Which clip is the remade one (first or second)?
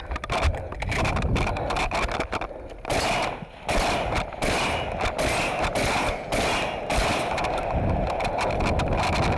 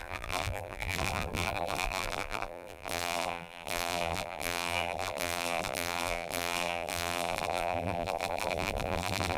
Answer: second